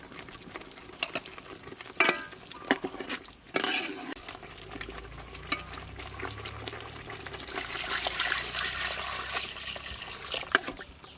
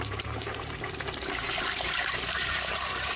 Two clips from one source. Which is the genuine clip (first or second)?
first